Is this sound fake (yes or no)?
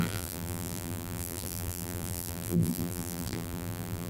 yes